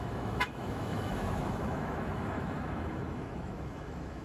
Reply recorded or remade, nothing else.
remade